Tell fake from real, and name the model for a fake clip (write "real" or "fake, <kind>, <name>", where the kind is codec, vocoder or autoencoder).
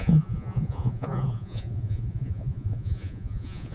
fake, vocoder, Vocos